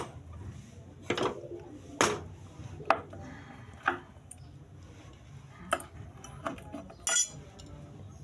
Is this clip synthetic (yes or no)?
no